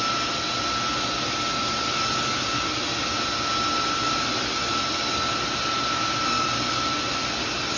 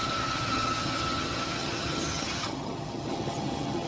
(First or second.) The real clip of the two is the first